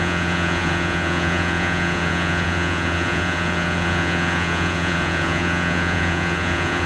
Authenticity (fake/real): fake